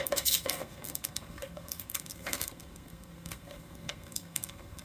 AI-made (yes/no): yes